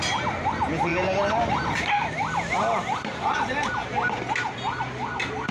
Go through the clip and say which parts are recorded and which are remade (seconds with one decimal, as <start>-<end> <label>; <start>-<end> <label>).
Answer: 0.0-5.5 recorded